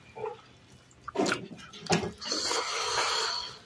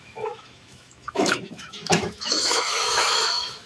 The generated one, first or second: second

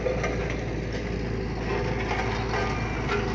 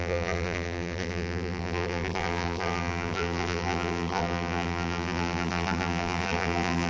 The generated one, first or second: second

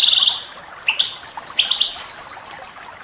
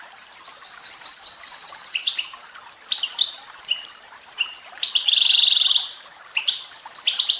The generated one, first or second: second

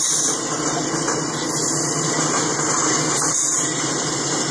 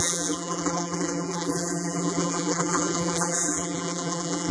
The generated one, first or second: second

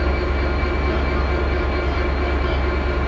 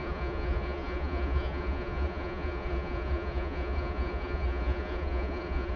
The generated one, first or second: second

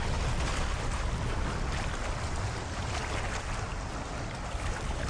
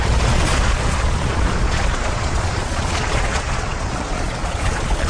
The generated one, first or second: second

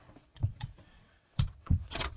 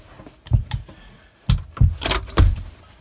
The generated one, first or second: first